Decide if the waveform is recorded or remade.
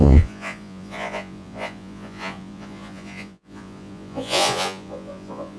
remade